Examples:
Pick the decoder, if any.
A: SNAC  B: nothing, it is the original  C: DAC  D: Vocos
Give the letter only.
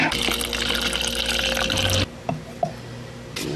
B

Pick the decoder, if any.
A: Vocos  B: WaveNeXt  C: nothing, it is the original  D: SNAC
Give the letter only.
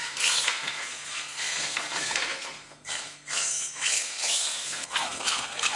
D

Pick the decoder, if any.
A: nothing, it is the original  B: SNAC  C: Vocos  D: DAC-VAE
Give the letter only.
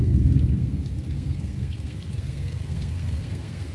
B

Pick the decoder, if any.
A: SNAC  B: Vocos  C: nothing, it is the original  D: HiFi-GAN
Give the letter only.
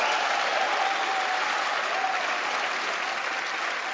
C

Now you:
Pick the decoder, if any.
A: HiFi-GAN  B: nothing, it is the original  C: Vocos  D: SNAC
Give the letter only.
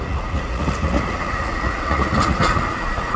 C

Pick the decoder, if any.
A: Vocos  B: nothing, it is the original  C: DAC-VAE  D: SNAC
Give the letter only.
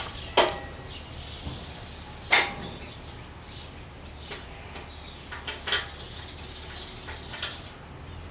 B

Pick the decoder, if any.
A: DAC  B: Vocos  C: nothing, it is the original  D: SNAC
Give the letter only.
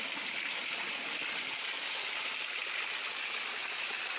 C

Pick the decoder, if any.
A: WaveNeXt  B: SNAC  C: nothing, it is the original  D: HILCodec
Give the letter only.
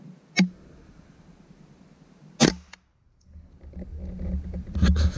C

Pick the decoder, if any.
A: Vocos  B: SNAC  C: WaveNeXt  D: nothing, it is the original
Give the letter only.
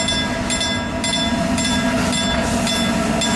D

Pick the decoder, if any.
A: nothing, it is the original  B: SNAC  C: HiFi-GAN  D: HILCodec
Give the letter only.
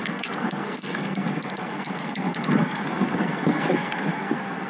B